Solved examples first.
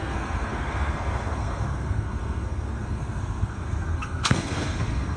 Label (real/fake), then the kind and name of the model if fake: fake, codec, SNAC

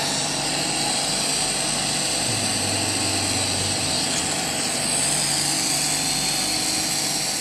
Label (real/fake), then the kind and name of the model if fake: real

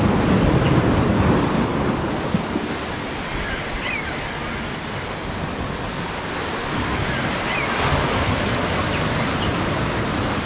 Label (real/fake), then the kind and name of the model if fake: real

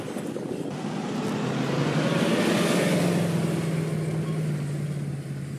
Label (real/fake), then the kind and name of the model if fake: real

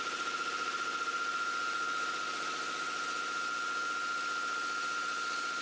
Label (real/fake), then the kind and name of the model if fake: real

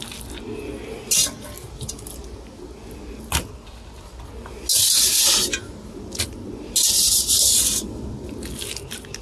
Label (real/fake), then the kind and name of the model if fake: real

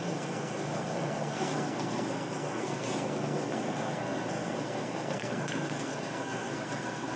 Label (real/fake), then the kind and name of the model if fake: fake, codec, SNAC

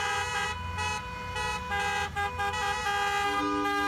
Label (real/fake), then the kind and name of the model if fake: real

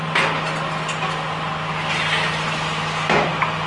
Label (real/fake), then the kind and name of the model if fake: real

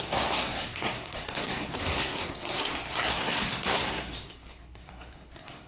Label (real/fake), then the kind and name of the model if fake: fake, codec, SNAC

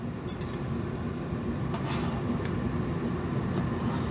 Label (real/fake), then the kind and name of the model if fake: real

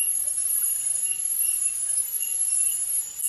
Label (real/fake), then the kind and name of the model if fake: real